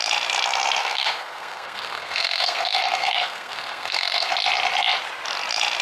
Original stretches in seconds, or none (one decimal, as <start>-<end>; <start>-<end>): 0.0-0.8; 4.3-5.8